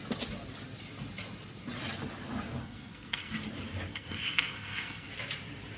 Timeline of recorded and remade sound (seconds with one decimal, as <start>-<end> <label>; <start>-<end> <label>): 0.0-2.6 recorded; 2.6-3.4 remade; 3.4-3.9 recorded; 3.9-5.1 remade; 5.1-5.8 recorded